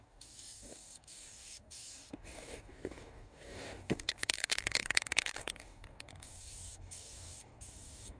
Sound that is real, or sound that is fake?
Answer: fake